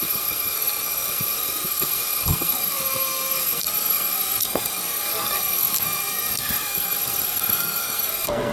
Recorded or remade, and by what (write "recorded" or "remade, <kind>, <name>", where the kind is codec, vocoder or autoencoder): remade, codec, SNAC